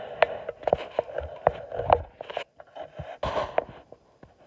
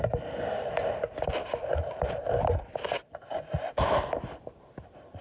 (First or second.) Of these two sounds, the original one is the first